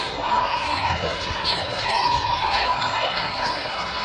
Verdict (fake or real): fake